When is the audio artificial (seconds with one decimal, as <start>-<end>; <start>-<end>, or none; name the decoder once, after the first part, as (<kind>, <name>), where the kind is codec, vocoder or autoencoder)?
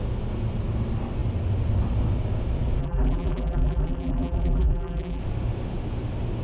2.8-5.2 (vocoder, BigVGAN v2)